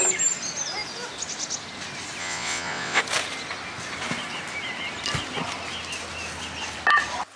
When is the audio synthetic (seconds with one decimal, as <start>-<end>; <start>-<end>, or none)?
2.2-3.0